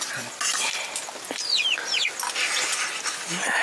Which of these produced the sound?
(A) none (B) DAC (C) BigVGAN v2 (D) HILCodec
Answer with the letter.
A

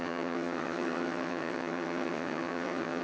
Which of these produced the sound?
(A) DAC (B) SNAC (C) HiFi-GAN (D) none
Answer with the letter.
C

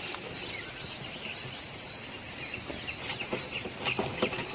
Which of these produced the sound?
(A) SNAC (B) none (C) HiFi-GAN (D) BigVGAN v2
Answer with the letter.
B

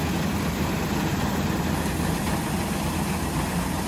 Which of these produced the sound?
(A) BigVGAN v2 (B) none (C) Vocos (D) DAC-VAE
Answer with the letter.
B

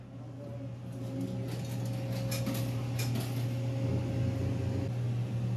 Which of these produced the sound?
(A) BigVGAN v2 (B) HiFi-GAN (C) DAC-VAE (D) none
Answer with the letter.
D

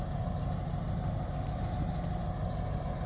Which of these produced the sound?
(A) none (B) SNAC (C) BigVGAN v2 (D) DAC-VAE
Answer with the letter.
A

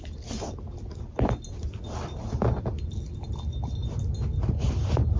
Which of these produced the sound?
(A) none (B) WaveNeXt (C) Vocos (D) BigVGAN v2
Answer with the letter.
A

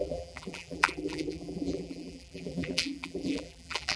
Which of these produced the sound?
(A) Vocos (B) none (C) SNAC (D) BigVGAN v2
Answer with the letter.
D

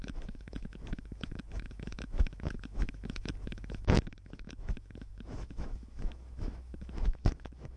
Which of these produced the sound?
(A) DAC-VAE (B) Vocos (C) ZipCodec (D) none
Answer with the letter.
A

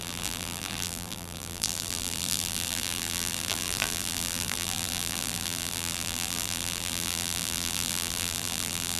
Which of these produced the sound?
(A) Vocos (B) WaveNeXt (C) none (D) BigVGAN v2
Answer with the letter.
D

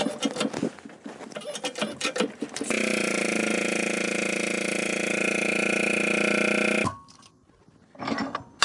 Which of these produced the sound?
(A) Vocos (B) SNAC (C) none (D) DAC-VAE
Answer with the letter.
C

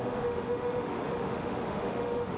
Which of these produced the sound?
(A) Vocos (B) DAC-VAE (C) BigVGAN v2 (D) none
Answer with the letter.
B